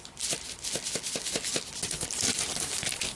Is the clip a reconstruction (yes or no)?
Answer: no